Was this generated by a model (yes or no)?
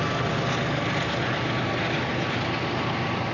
no